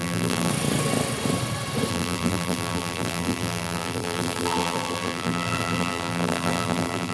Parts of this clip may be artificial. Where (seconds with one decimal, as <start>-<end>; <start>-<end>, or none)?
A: 0.0-0.5; 1.9-7.1